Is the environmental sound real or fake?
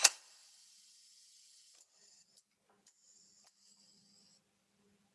real